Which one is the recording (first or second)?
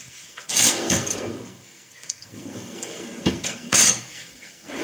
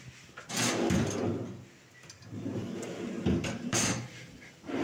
second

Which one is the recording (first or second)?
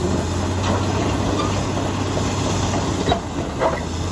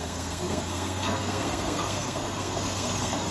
first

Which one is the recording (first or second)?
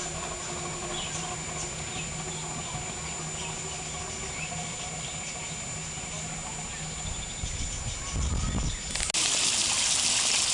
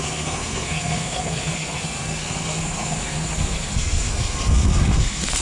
first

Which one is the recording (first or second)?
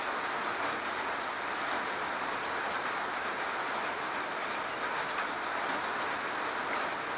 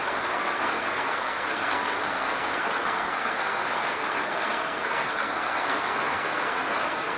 first